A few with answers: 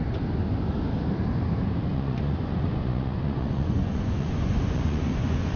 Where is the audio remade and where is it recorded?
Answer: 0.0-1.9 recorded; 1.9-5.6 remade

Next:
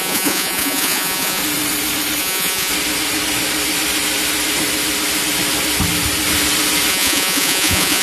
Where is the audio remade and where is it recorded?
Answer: 0.0-1.4 remade; 1.4-2.2 recorded; 2.2-2.7 remade; 2.7-6.9 recorded; 6.9-8.0 remade